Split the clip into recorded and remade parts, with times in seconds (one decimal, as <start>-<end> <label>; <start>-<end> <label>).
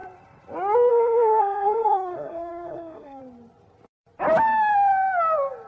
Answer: 0.0-0.9 recorded; 0.9-3.2 remade; 3.2-5.7 recorded